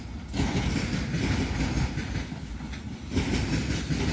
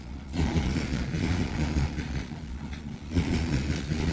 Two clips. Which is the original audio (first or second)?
first